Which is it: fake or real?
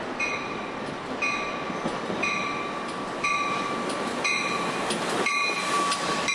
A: real